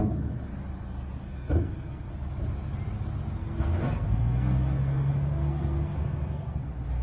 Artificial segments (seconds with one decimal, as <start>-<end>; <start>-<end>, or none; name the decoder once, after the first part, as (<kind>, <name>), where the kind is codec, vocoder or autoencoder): 0.0-0.5 (codec, SNAC); 1.2-2.1; 3.4-7.0